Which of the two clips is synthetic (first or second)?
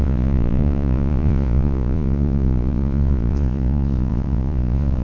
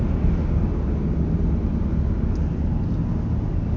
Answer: first